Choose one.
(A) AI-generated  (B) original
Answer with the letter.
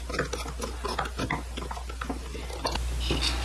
B